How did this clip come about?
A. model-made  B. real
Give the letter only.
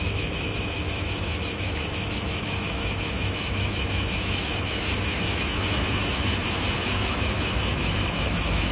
A